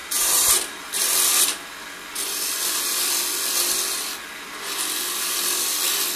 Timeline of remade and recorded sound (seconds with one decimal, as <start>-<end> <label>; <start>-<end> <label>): 0.0-0.9 remade; 0.9-6.2 recorded

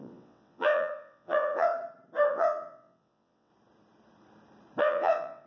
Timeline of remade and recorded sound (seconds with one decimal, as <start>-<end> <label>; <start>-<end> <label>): 0.0-1.7 remade; 1.7-2.3 recorded; 2.3-3.5 remade; 3.5-4.8 recorded; 4.8-5.5 remade

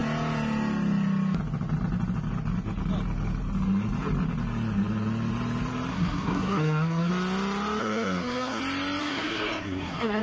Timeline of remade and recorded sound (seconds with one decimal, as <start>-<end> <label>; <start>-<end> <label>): 0.0-5.9 recorded; 5.9-7.1 remade; 7.1-7.8 recorded; 7.8-8.6 remade; 8.6-9.0 recorded; 9.0-10.2 remade

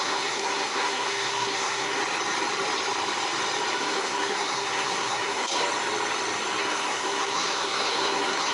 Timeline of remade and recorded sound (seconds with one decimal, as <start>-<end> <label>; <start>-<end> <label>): 0.0-2.0 remade; 2.0-3.7 recorded; 3.7-5.6 remade; 5.6-6.6 recorded; 6.6-8.5 remade

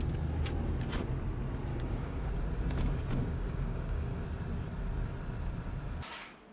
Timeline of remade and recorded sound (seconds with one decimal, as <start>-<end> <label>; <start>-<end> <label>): 0.0-1.7 recorded; 1.7-2.3 remade; 2.3-3.2 recorded; 3.2-4.2 remade; 4.2-6.5 recorded

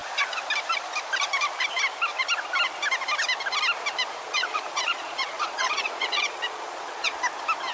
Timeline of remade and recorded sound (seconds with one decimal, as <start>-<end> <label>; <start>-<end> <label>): 0.0-4.2 recorded; 4.2-7.2 remade; 7.2-7.7 recorded